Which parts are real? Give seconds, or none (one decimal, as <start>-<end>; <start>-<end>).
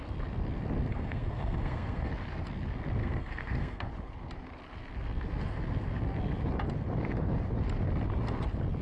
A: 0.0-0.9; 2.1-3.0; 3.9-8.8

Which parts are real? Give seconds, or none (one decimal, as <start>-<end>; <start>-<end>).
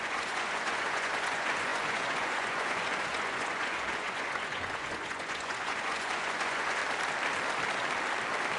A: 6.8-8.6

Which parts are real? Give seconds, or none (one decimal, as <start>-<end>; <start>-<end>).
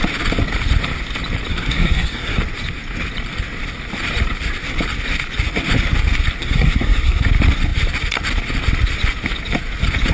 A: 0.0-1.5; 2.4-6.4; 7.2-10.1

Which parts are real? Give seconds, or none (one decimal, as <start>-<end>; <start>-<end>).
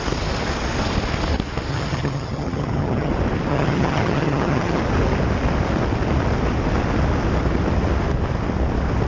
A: 0.0-1.7; 3.1-3.5; 4.8-9.1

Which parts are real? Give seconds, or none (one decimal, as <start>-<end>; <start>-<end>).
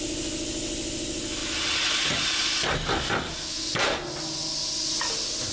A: 0.0-5.5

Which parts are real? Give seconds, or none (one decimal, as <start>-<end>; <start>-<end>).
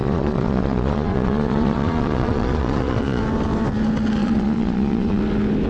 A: 3.2-4.2; 5.2-5.7